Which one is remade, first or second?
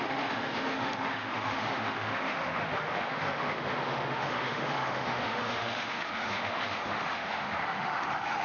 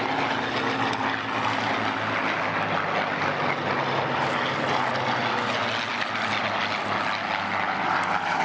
first